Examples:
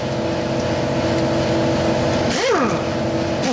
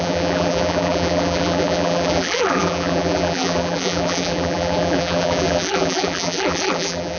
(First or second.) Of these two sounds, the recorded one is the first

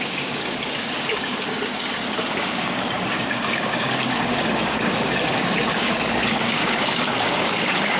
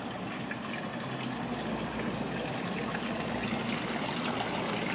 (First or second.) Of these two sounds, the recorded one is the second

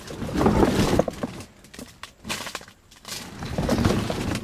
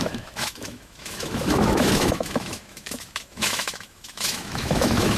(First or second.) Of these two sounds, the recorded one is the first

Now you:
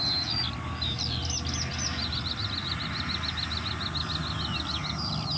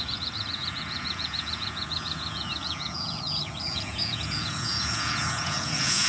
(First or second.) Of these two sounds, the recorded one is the first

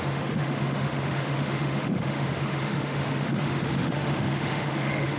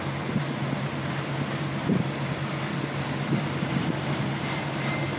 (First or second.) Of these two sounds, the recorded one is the second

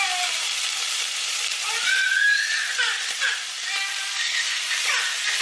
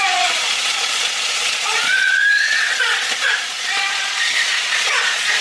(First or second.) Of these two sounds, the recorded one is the first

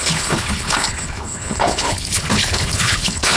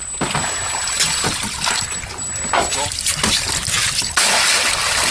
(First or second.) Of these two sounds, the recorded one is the second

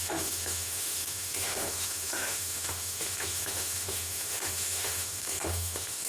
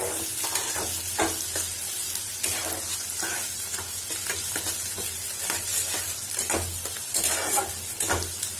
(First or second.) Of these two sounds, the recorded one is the second